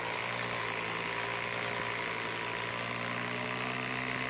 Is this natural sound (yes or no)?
yes